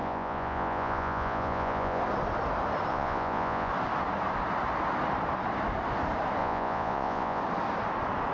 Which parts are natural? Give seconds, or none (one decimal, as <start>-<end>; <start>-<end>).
2.0-2.9; 3.7-6.4; 7.4-8.3